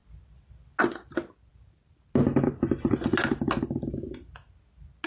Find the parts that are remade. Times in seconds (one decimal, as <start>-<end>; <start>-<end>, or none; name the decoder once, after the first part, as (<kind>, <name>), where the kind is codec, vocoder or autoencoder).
none